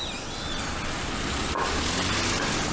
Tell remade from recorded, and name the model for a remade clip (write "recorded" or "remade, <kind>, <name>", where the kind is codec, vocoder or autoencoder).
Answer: recorded